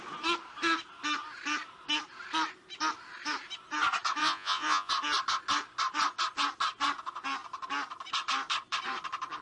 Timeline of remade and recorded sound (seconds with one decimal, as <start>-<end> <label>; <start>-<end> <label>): 0.0-4.2 recorded; 4.2-4.9 remade; 4.9-9.4 recorded